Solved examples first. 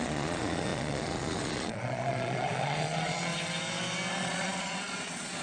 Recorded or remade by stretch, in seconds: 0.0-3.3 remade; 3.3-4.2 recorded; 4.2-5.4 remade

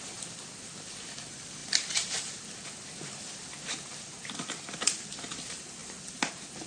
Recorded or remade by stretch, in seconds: 0.0-6.7 recorded

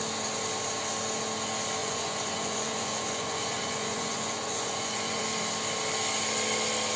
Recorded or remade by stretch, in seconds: 0.0-1.8 recorded; 1.8-5.2 remade; 5.2-7.0 recorded

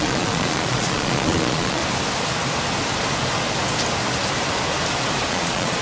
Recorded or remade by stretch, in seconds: 0.0-1.8 remade; 1.8-5.3 recorded; 5.3-5.8 remade

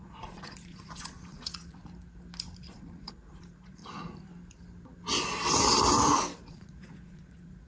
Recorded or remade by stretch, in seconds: 0.0-1.8 remade; 1.8-2.6 recorded; 2.6-3.8 remade; 3.8-6.5 recorded; 6.5-7.7 remade